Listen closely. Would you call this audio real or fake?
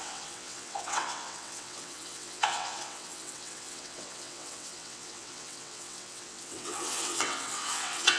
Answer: fake